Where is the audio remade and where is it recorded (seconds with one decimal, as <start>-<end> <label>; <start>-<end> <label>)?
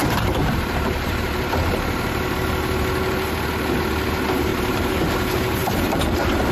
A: 0.0-1.3 remade; 1.3-4.5 recorded; 4.5-5.1 remade; 5.1-5.6 recorded; 5.6-6.5 remade